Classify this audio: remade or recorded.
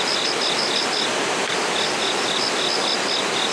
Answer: recorded